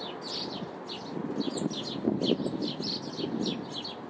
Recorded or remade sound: recorded